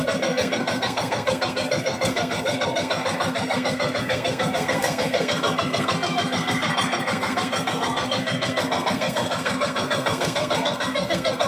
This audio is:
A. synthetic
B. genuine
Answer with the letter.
A